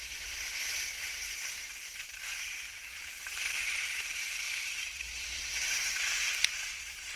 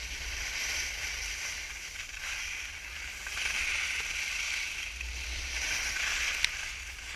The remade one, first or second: first